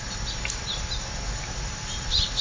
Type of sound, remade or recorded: recorded